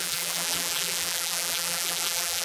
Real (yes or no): no